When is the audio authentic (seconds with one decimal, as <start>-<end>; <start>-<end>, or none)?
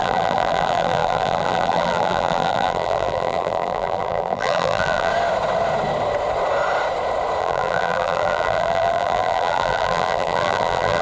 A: 5.1-7.4